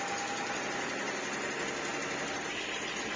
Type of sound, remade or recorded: recorded